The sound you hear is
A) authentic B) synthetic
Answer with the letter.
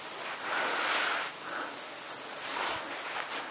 A